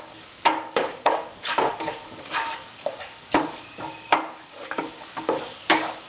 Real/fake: fake